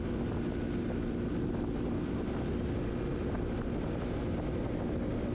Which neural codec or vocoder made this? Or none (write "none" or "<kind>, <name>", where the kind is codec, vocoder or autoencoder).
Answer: none